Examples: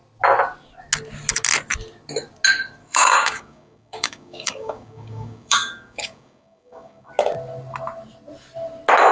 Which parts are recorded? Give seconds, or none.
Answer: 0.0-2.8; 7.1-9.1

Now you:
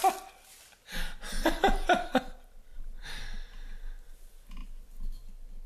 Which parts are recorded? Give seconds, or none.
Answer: 0.0-2.7; 3.2-5.7

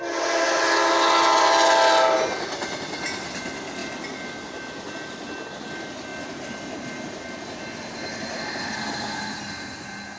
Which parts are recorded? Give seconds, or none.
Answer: 0.0-10.2